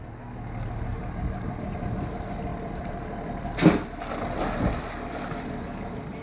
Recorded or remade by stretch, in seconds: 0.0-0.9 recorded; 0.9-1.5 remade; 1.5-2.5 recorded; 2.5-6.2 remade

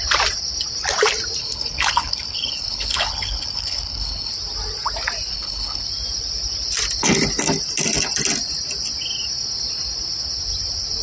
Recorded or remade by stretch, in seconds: 0.0-1.4 recorded; 1.4-4.3 remade; 4.3-5.3 recorded; 5.3-5.8 remade; 5.8-11.0 recorded

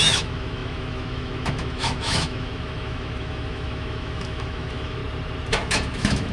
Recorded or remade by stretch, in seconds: 0.0-5.0 remade; 5.0-5.5 recorded; 5.5-6.3 remade